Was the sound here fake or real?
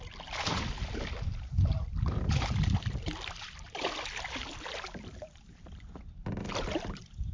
real